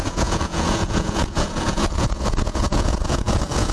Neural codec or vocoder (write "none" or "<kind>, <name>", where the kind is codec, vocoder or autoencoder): vocoder, Vocos